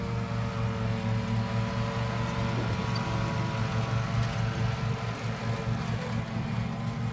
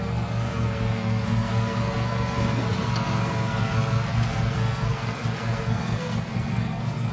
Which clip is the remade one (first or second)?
second